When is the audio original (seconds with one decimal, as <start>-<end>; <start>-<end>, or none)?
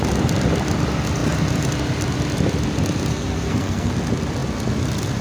0.0-3.1; 3.9-5.2